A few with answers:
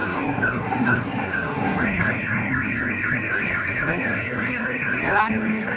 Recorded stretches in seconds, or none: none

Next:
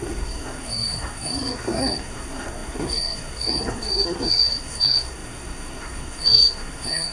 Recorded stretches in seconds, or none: none

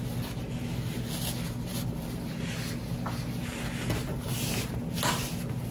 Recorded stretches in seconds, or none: 0.0-5.7

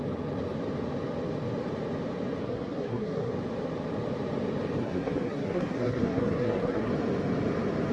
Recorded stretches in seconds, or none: 0.0-2.4; 3.3-4.8; 6.9-7.9

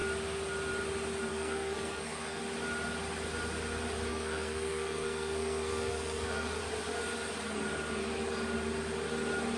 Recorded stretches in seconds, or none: 0.0-1.3; 2.4-4.1; 6.6-9.6

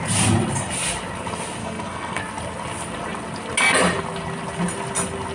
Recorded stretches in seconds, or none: 0.0-1.6; 2.2-5.3

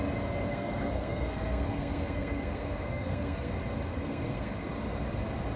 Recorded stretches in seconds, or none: 0.0-0.5; 3.5-3.9; 4.7-5.6